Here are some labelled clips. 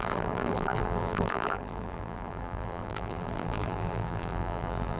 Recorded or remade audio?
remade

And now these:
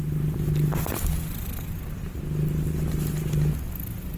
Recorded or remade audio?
recorded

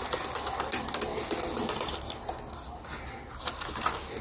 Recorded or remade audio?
recorded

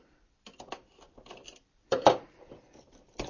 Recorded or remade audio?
remade